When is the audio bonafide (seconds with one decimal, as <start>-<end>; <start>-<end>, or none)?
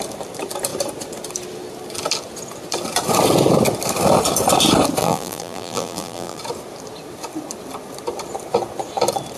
0.0-5.0; 6.4-9.4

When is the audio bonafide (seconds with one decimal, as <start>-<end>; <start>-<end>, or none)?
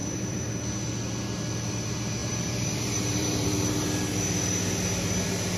0.5-2.2; 3.9-5.6